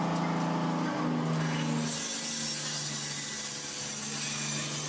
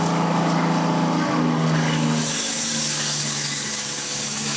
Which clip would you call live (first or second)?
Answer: first